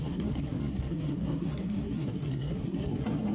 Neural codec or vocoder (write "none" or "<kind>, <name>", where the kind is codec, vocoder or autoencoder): codec, SNAC